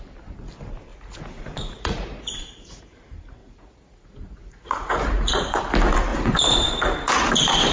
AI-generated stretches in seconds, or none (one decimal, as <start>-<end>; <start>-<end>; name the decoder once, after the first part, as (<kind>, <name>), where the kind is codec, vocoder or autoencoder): 0.9-2.8 (vocoder, Vocos); 3.4-5.6; 6.1-6.7